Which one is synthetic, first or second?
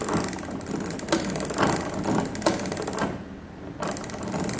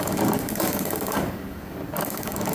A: second